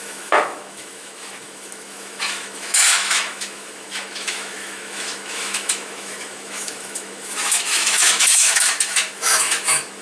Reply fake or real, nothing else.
fake